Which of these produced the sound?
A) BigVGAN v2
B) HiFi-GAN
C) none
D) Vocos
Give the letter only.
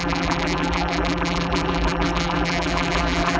A